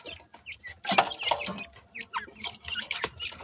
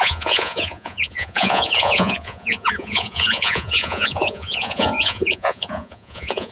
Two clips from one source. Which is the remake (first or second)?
second